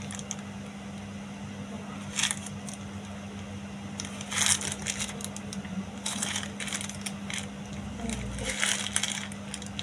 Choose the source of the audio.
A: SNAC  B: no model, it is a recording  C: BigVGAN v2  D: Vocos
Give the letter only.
B